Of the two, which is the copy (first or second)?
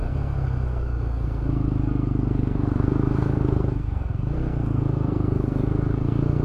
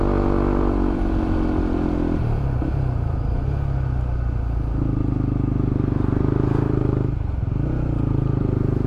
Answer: first